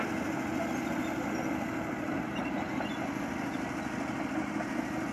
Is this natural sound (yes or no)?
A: yes